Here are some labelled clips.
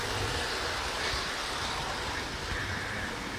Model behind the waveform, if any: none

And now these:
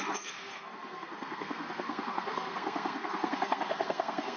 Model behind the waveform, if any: codec, SNAC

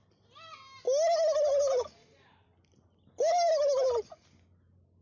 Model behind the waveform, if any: none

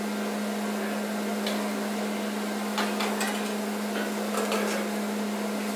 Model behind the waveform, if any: none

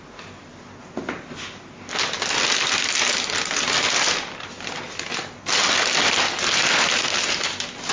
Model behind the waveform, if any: none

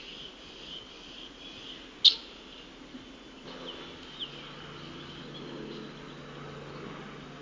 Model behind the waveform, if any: none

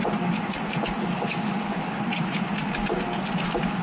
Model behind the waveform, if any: none